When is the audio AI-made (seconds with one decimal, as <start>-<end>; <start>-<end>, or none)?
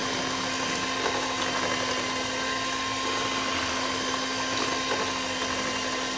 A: none